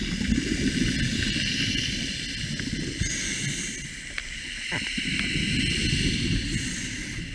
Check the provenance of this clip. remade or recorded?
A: recorded